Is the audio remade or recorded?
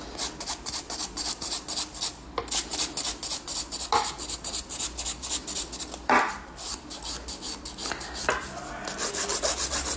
recorded